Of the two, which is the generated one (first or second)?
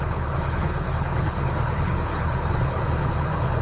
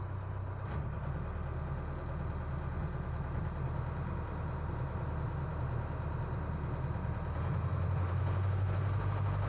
first